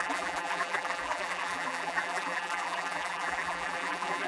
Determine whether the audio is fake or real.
fake